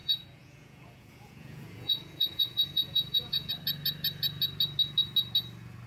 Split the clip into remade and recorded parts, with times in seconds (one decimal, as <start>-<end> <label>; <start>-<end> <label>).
0.0-3.5 remade; 3.5-5.9 recorded